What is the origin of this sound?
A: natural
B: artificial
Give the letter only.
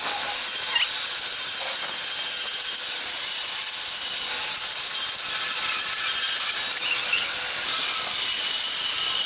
A